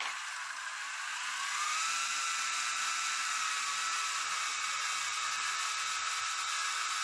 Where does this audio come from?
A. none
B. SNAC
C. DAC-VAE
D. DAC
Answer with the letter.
A